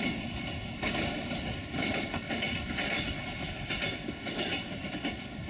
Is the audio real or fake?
real